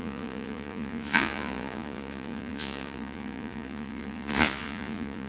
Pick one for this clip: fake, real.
fake